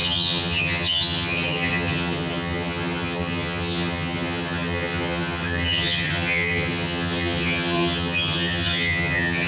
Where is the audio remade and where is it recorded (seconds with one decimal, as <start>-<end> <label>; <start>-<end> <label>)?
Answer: 0.0-9.5 remade

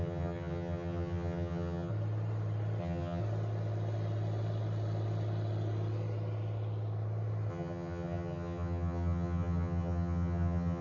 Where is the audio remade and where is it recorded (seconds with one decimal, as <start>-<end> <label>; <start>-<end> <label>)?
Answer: 0.0-1.9 remade; 1.9-2.8 recorded; 2.8-3.2 remade; 3.2-7.5 recorded; 7.5-10.8 remade

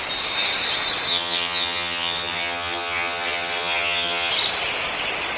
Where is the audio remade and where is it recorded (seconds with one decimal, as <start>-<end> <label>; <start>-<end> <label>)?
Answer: 0.0-1.1 recorded; 1.1-4.3 remade; 4.3-5.4 recorded

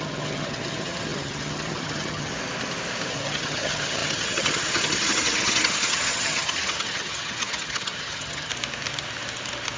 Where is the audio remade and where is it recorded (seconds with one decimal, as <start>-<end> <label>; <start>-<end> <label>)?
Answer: 0.0-2.3 remade; 2.3-3.1 recorded; 3.1-8.5 remade; 8.5-9.8 recorded

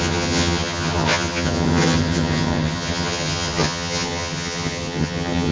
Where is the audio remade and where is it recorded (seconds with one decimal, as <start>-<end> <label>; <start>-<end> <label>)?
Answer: 0.0-5.5 remade

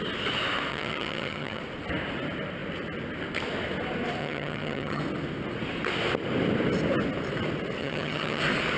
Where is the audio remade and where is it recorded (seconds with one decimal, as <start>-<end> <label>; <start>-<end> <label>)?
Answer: 0.0-0.7 recorded; 0.7-1.6 remade; 1.6-4.2 recorded; 4.2-5.0 remade; 5.0-7.8 recorded; 7.8-8.4 remade; 8.4-8.8 recorded